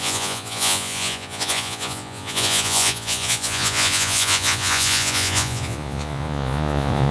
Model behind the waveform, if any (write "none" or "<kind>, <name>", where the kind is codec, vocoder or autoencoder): vocoder, Vocos